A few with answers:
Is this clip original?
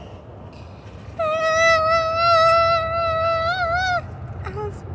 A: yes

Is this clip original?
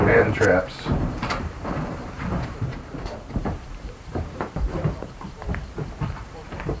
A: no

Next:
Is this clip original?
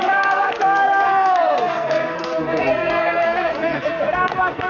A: no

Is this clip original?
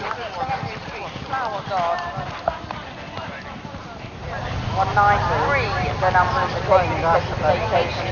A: yes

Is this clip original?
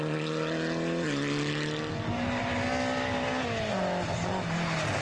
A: yes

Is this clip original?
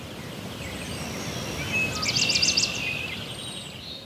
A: yes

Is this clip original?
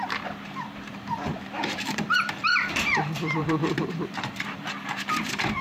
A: no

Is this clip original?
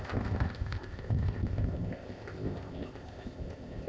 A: no